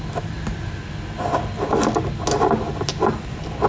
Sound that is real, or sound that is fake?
real